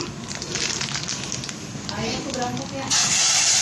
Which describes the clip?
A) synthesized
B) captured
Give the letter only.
B